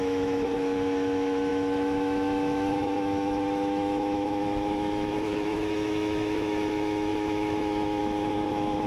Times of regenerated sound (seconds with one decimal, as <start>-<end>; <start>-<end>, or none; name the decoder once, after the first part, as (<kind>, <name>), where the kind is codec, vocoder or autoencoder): 0.0-8.9 (autoencoder, DAC-VAE)